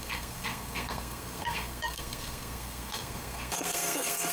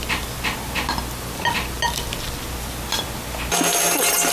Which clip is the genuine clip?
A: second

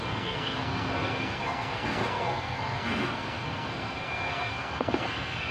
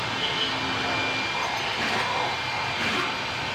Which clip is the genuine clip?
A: second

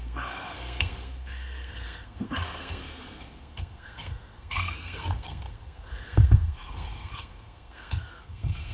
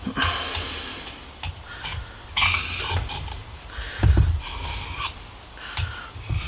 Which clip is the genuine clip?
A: second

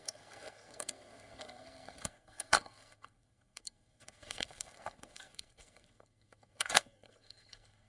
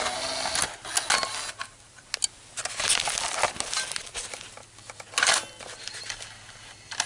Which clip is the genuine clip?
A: second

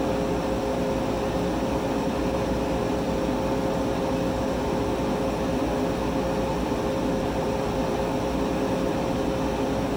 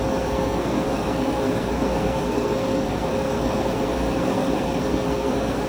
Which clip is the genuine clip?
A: first